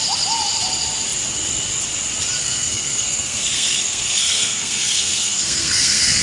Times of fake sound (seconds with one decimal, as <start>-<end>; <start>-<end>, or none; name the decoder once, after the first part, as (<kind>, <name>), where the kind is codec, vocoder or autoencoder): 2.4-6.2 (codec, SNAC)